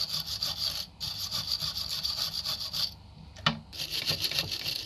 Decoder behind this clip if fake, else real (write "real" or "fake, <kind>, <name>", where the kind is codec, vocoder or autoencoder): real